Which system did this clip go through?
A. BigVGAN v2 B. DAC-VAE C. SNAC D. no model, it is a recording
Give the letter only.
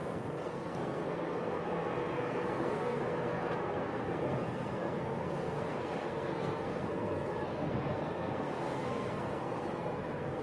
C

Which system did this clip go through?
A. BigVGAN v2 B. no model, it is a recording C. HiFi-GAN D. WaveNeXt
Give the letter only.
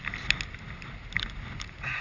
B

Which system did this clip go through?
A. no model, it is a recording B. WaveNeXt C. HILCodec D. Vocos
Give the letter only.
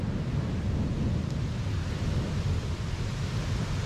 A